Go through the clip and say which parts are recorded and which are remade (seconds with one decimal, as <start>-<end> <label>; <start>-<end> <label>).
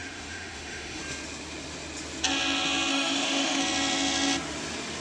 0.0-1.0 remade; 1.0-2.9 recorded; 2.9-3.6 remade; 3.6-5.0 recorded